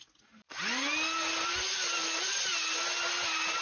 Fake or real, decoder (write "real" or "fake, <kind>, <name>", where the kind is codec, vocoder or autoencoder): real